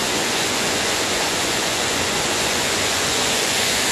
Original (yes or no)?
no